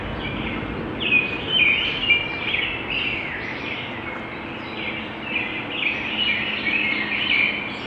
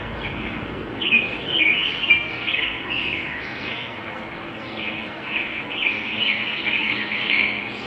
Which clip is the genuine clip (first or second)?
first